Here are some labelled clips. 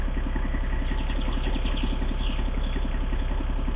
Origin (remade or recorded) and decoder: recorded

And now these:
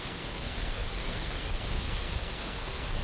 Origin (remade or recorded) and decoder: remade, codec, SNAC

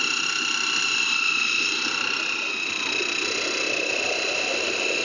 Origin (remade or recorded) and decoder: recorded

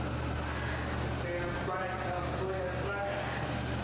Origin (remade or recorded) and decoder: recorded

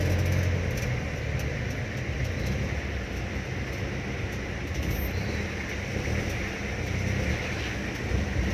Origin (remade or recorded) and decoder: recorded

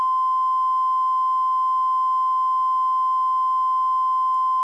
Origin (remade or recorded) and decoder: recorded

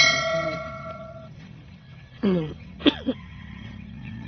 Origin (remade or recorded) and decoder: remade, vocoder, WaveNeXt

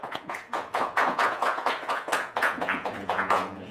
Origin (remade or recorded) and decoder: remade, vocoder, Vocos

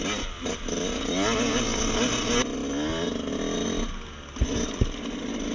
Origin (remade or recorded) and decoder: recorded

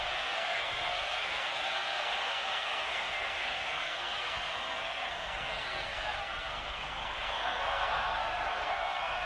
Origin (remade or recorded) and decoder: remade, codec, SNAC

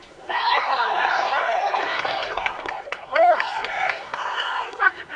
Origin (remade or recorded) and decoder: remade, codec, SNAC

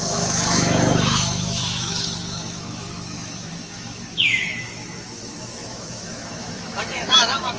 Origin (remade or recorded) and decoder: remade, autoencoder, DAC-VAE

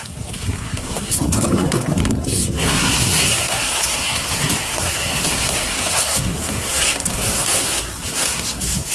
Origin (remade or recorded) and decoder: remade, codec, SNAC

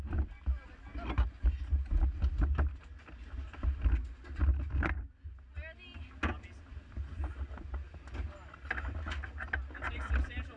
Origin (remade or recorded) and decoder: recorded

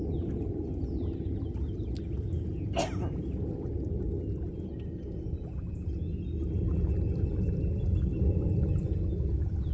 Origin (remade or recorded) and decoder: recorded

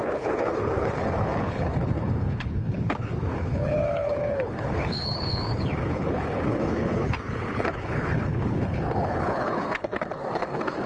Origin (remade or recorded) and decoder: remade, codec, HILCodec